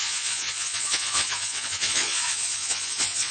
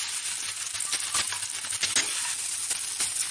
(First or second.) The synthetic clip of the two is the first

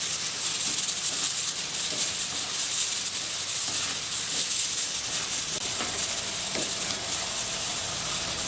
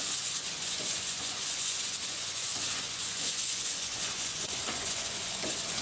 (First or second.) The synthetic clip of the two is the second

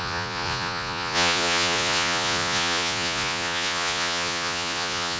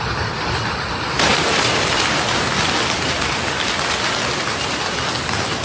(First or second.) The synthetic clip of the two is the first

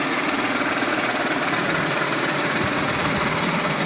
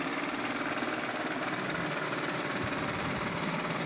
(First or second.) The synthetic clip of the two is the first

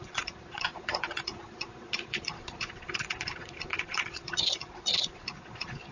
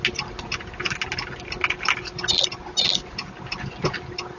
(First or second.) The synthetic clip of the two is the first